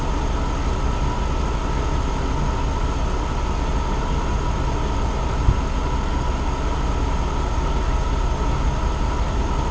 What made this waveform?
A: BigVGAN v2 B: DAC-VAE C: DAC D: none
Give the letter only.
D